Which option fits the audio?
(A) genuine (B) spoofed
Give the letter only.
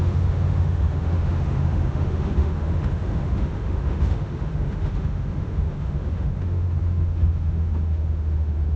B